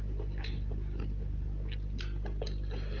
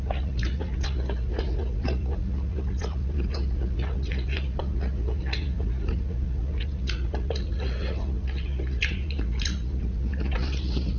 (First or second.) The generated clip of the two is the second